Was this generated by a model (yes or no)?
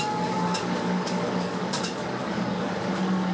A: yes